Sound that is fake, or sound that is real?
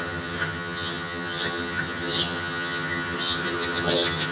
fake